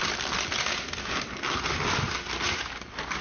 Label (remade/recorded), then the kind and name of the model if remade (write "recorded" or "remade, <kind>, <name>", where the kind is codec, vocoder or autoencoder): recorded